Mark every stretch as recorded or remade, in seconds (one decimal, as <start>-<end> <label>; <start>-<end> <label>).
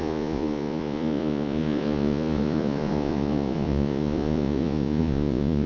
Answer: 0.0-5.7 remade